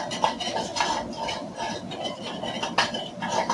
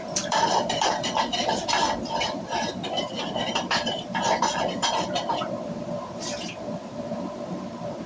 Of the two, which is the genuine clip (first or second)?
first